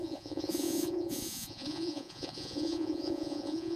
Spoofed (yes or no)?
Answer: yes